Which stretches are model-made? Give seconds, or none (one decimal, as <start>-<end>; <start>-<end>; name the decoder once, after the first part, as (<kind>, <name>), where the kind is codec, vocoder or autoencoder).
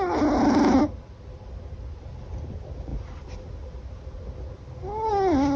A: none